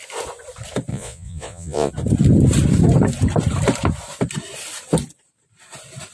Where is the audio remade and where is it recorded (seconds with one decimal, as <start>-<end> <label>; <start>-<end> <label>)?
0.0-0.9 recorded; 0.9-1.9 remade; 1.9-6.1 recorded